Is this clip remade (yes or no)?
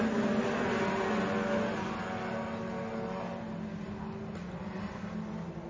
no